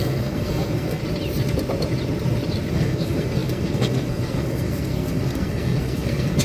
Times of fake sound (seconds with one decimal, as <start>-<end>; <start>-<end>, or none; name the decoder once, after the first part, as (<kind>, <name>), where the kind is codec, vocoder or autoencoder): 0.0-1.0 (codec, SNAC); 2.7-6.4

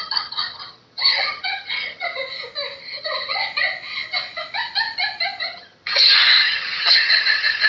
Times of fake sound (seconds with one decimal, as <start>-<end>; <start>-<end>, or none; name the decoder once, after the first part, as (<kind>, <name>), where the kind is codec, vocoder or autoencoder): 0.0-2.2 (vocoder, HiFi-GAN); 2.8-3.4; 5.4-7.7

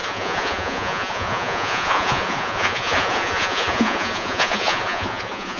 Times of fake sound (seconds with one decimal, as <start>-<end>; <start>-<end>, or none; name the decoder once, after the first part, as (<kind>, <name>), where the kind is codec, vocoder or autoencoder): 0.0-5.6 (vocoder, Vocos)

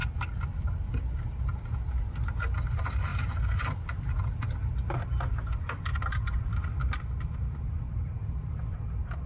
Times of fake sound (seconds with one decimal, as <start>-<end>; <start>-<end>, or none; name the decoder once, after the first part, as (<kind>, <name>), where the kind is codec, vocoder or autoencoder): none

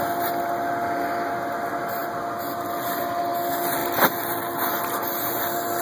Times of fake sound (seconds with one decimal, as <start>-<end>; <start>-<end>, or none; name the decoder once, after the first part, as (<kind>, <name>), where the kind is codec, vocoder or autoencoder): none

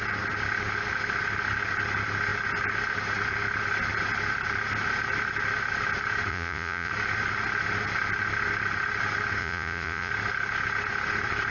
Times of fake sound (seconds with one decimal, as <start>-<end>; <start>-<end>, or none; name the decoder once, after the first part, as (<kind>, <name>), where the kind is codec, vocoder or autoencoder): 6.3-6.9 (vocoder, Vocos); 9.4-10.1

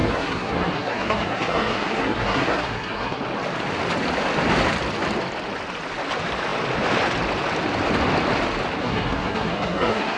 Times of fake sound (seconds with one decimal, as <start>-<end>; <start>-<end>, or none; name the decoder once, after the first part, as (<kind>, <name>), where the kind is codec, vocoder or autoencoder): 0.0-3.2 (codec, SNAC); 8.8-10.2

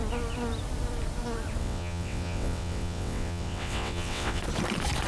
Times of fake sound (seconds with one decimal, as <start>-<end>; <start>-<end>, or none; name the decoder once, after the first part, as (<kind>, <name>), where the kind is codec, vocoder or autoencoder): 1.6-4.4 (vocoder, WaveNeXt)